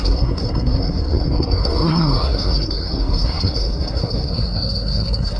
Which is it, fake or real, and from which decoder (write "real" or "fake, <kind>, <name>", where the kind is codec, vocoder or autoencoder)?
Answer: fake, codec, SNAC